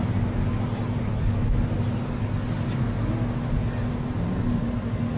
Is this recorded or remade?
recorded